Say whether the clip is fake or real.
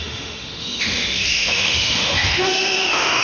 fake